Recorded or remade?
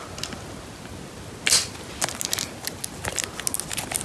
recorded